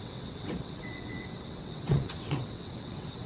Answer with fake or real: fake